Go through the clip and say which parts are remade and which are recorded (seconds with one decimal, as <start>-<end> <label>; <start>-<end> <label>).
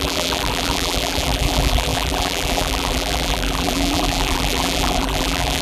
0.0-5.6 remade